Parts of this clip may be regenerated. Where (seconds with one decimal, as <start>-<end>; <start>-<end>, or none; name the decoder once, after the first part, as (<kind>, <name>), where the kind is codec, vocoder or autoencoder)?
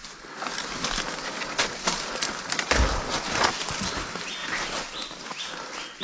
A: none